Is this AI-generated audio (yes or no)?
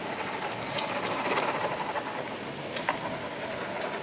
no